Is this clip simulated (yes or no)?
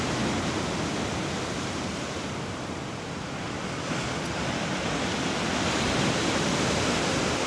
no